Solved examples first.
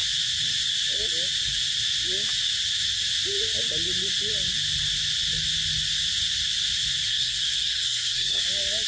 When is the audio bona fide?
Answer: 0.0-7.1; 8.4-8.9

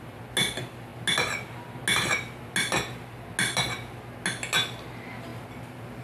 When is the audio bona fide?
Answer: 0.0-6.0